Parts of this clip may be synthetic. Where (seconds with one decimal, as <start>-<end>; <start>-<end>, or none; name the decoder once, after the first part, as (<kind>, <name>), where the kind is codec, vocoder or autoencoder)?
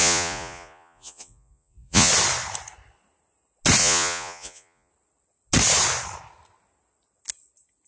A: 0.0-2.1 (vocoder, Vocos); 3.8-4.9